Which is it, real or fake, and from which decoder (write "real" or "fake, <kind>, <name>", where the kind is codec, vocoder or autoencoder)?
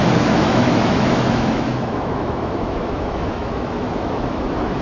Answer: fake, autoencoder, DAC-VAE